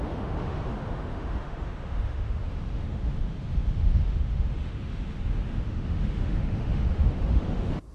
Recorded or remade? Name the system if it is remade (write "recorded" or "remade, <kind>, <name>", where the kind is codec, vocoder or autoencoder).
remade, autoencoder, DAC-VAE